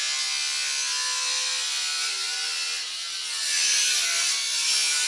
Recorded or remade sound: recorded